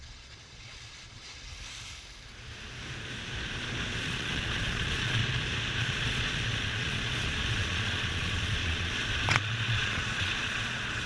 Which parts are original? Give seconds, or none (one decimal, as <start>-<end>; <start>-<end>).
1.5-4.0; 5.2-5.8